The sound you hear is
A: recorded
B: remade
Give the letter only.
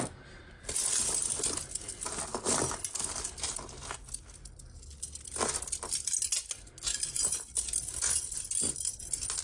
A